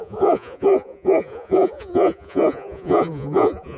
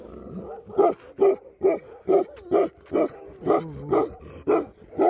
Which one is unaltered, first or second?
second